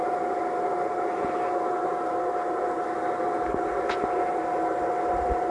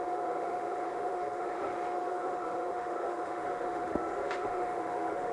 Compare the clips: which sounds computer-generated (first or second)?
second